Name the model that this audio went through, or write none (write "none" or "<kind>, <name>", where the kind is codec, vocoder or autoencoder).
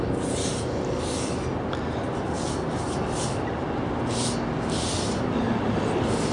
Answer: none